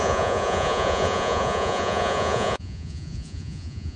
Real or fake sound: fake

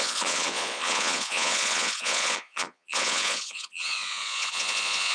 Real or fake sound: fake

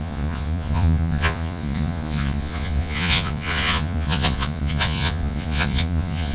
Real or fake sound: fake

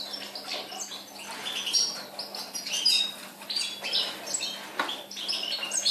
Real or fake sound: real